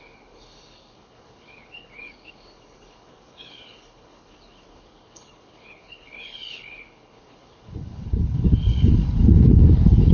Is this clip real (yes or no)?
no